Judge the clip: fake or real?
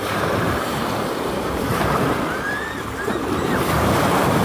fake